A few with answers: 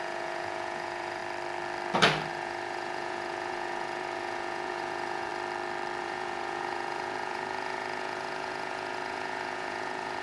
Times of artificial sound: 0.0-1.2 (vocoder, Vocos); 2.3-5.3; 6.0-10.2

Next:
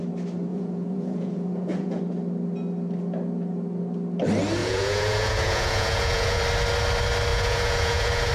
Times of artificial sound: 0.5-2.0 (vocoder, Vocos); 4.6-6.4; 7.3-8.3

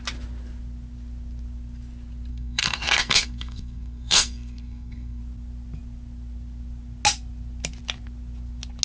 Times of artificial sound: 2.3-5.2 (codec, SNAC)

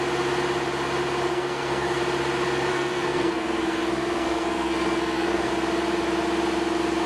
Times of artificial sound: 1.3-2.0 (codec, SNAC); 2.7-5.5

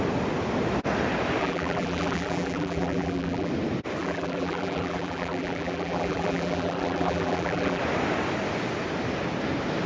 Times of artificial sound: 1.4-3.5 (vocoder, BigVGAN v2); 4.0-7.8

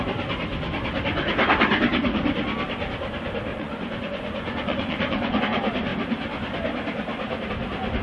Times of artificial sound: 3.5-5.4 (vocoder, Vocos)